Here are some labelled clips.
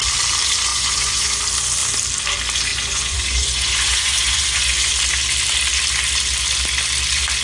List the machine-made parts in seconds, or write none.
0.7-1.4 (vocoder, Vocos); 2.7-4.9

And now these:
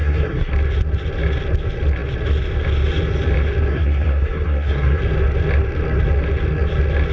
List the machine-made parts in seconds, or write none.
0.0-0.5 (codec, SNAC); 3.7-5.0

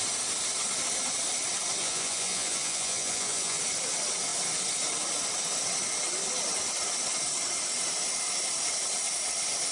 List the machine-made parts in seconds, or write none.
1.8-3.6 (vocoder, Vocos)

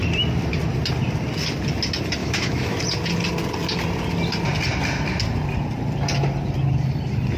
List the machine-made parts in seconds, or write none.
2.2-2.8 (autoencoder, DAC-VAE)

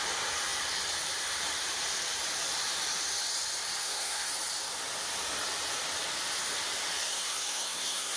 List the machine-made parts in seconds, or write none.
3.8-4.3 (codec, SNAC); 7.1-8.2

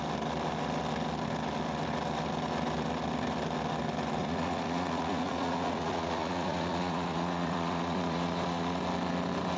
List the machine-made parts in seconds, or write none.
4.2-8.8 (vocoder, Vocos)